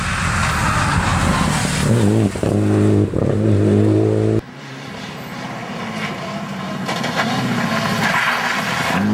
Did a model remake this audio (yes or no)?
no